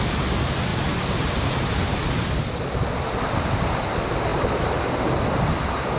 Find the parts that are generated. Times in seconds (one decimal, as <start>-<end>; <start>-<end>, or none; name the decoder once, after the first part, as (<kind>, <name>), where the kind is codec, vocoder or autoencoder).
0.7-1.9 (vocoder, BigVGAN v2); 4.3-5.2